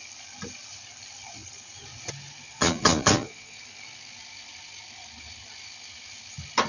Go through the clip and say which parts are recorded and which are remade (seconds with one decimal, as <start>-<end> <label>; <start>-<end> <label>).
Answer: 0.0-2.5 recorded; 2.5-3.6 remade; 3.6-6.7 recorded